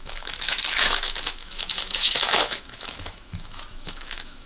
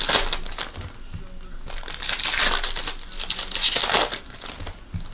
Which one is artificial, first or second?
first